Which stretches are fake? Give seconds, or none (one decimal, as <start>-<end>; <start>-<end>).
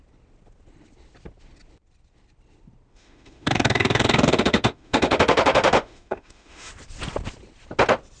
2.9-6.7